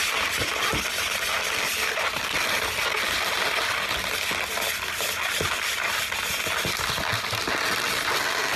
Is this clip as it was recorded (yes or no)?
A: yes